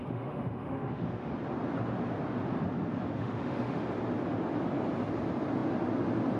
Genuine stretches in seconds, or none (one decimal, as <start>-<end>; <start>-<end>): 1.3-3.2; 3.8-6.4